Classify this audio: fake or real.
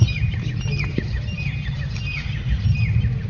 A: real